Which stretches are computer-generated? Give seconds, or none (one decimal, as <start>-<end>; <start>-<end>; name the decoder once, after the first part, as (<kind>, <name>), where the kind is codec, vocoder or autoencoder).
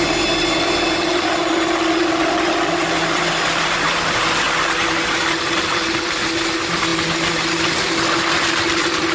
none